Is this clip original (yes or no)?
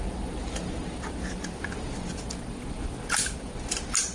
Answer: yes